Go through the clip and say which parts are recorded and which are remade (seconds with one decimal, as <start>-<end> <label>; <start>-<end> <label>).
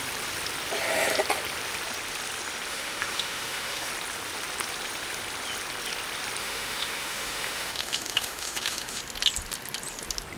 0.0-2.7 recorded; 2.7-3.9 remade; 3.9-6.4 recorded; 6.4-9.0 remade; 9.0-10.4 recorded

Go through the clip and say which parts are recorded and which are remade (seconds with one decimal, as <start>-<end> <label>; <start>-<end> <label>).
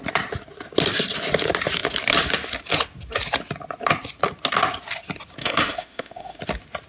0.0-5.4 recorded; 5.4-6.4 remade; 6.4-6.9 recorded